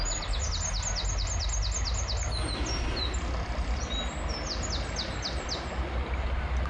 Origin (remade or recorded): recorded